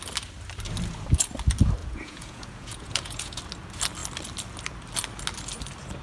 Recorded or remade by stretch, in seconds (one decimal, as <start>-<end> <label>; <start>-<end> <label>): 0.0-1.8 recorded; 1.8-3.4 remade; 3.4-6.0 recorded